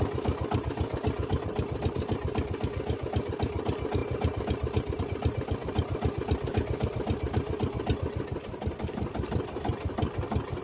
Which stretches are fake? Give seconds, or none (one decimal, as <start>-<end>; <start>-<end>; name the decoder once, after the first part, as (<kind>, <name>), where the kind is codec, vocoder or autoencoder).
none